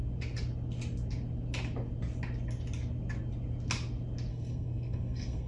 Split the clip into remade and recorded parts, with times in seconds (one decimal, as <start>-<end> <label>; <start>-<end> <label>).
0.0-4.3 recorded; 4.3-5.5 remade